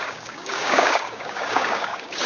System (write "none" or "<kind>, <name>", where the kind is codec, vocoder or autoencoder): codec, DAC